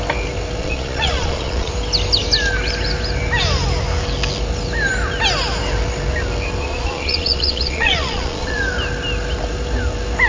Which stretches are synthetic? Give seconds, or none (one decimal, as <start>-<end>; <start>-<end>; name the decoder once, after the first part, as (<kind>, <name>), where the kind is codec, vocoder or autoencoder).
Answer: 0.6-1.7 (vocoder, Vocos); 6.6-8.6